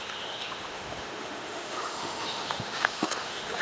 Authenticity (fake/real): fake